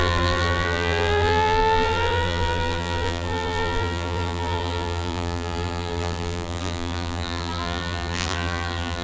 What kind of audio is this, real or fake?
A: fake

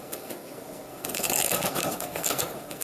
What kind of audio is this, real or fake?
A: fake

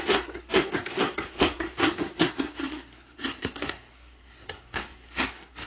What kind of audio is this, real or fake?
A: fake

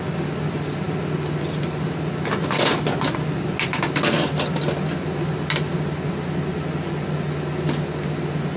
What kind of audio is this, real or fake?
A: real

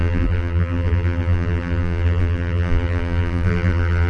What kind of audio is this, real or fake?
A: fake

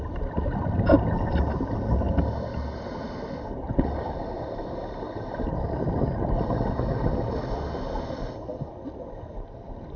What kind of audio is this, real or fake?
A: real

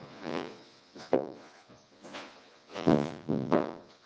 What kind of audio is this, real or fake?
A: fake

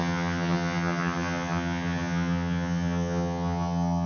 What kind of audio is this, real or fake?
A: fake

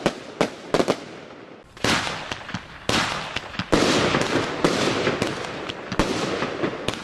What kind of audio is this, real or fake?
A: real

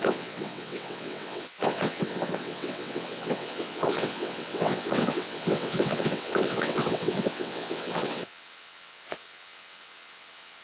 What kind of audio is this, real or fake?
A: fake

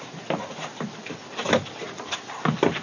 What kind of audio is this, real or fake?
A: real